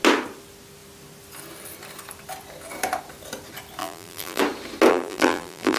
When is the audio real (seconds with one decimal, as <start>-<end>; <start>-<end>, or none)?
0.0-3.8; 4.4-4.9